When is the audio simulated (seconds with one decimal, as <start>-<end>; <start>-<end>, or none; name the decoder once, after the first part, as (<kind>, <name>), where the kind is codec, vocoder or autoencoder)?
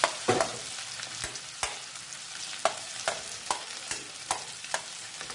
0.0-0.5 (vocoder, BigVGAN v2); 2.2-5.3